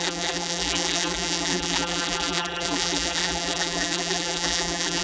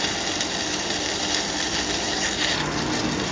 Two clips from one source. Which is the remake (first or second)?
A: first